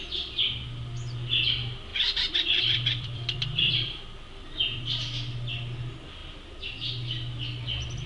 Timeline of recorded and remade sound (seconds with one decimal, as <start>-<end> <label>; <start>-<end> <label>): 0.0-1.9 recorded; 1.9-4.0 remade; 4.0-8.1 recorded